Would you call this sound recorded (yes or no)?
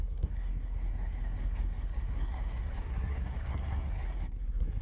no